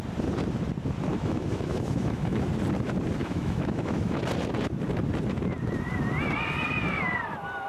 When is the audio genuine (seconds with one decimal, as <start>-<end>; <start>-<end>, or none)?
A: 0.0-1.1; 2.4-3.2; 4.2-7.7